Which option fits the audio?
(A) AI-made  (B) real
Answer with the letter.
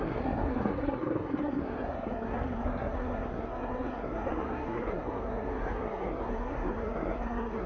A